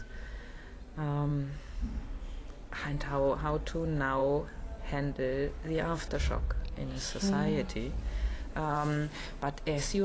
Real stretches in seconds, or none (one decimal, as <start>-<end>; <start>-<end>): 0.0-8.3; 9.1-10.0